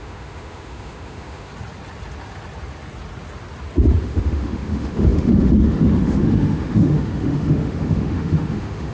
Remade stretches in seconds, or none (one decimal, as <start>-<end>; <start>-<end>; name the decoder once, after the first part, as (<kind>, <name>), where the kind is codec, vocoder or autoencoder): 0.0-1.5 (autoencoder, DAC-VAE); 4.0-8.9

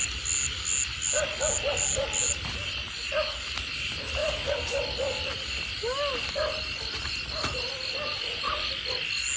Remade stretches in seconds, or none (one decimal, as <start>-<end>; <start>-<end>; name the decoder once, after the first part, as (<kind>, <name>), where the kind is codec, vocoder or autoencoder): none